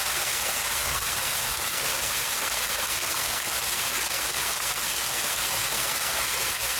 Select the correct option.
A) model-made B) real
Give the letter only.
A